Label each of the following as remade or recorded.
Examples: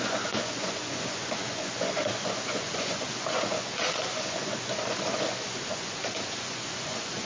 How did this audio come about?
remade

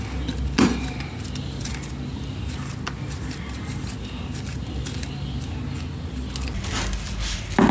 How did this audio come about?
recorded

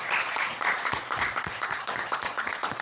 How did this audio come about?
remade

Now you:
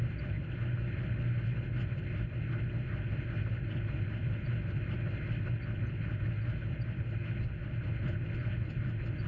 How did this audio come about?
recorded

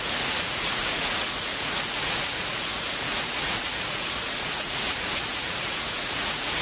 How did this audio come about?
remade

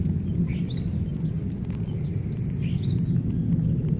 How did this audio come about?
recorded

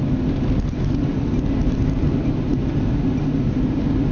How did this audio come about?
recorded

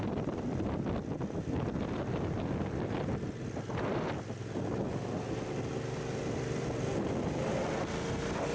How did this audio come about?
recorded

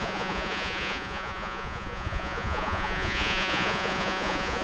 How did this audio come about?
remade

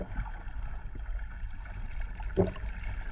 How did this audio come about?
recorded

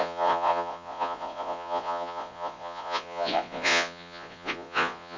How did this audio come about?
remade